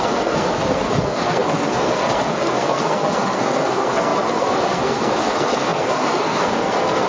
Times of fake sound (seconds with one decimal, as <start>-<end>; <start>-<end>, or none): 0.0-7.1